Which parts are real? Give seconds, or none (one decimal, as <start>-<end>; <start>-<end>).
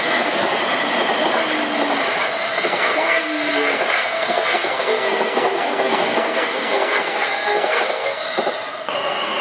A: 0.6-2.5; 8.2-8.8